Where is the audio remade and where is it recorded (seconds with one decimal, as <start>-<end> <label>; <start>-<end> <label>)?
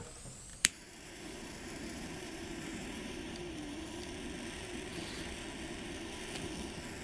0.0-0.5 recorded; 0.5-4.0 remade; 4.0-7.0 recorded